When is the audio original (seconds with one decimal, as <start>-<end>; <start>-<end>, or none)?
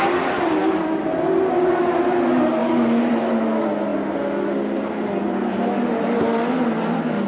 0.0-7.3